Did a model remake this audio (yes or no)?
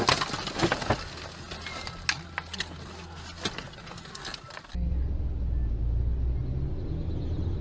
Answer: no